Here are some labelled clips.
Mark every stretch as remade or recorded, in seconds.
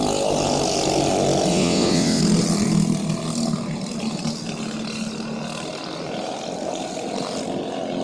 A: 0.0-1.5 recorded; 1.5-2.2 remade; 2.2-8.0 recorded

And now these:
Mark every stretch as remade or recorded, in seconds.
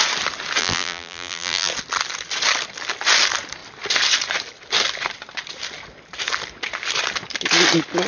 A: 0.0-0.6 recorded; 0.6-1.7 remade; 1.7-8.1 recorded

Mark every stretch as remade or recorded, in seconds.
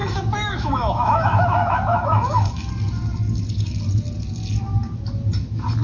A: 0.0-2.7 remade; 2.7-5.8 recorded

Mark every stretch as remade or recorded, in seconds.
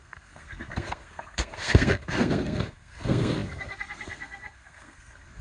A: 0.0-5.4 remade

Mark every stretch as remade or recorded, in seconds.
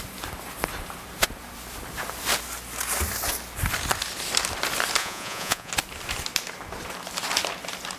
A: 0.0-5.0 recorded; 5.0-5.7 remade; 5.7-8.0 recorded